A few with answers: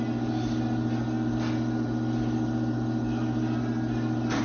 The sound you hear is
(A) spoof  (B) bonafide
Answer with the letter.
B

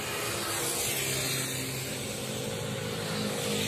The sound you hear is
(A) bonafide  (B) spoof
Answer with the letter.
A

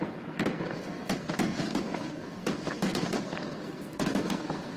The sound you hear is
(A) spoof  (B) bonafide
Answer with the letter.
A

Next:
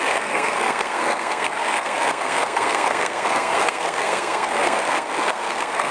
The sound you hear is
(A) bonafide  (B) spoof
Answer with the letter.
B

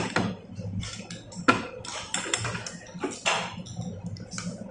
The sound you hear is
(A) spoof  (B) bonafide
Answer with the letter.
B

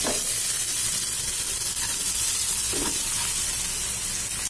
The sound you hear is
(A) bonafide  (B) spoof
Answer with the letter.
A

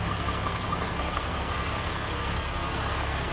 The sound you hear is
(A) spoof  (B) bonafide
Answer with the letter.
A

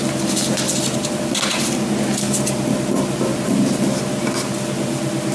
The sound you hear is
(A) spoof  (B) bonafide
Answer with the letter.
B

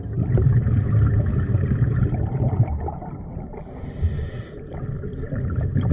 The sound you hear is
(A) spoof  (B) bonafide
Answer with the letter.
B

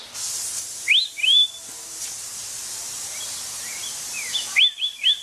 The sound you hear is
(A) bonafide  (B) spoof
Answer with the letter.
A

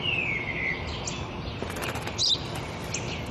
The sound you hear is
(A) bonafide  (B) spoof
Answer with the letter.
A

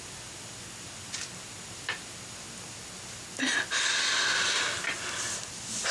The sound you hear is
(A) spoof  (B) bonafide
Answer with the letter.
B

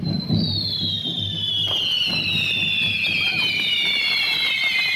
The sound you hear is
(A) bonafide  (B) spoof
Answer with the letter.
A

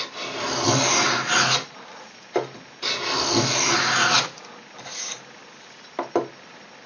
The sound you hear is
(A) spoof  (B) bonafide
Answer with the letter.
B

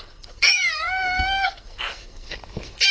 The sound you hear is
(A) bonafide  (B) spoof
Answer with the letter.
B